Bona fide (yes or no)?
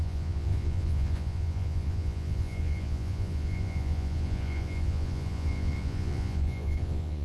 no